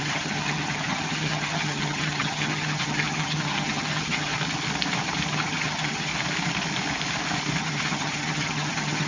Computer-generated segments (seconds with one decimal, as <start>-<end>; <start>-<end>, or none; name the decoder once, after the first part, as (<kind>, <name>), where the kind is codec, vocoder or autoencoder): 0.0-4.3 (vocoder, HiFi-GAN); 5.3-6.1; 7.6-9.1